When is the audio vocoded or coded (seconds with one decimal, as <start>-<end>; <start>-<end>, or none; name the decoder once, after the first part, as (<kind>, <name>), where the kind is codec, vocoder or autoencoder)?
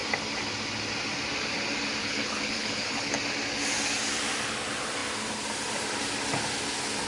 2.0-3.1 (codec, HILCodec)